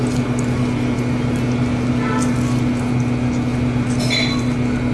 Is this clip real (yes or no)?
yes